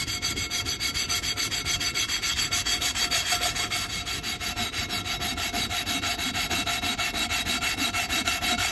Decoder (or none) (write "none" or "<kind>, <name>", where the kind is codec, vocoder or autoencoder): none